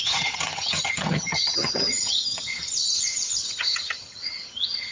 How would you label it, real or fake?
fake